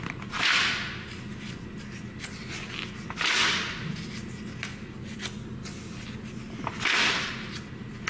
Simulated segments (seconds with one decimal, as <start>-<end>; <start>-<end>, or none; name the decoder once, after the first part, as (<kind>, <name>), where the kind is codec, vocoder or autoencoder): none